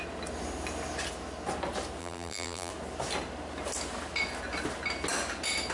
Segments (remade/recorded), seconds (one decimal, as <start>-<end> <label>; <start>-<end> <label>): 0.0-2.0 recorded; 2.0-2.7 remade; 2.7-5.7 recorded